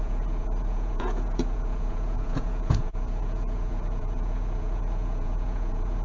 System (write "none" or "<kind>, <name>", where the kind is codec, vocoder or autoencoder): vocoder, Vocos